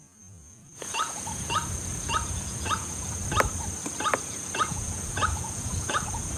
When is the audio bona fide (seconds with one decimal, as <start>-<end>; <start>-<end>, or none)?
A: 3.2-4.2